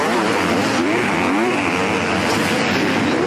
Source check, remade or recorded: recorded